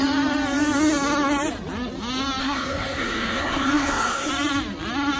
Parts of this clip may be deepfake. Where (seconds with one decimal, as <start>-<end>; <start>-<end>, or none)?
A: 2.4-4.3